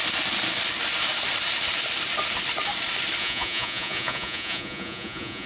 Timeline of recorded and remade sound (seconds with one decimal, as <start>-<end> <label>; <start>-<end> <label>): 0.0-3.2 recorded; 3.2-5.5 remade